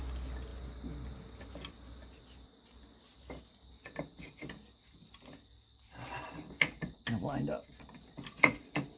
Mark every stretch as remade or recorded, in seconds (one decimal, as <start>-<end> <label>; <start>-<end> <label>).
0.0-9.0 recorded